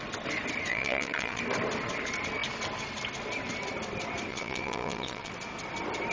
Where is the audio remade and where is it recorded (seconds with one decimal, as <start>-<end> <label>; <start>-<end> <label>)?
0.0-0.7 recorded; 0.7-1.4 remade; 1.4-4.3 recorded; 4.3-5.3 remade; 5.3-6.1 recorded